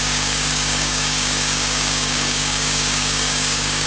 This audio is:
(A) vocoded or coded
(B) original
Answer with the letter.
A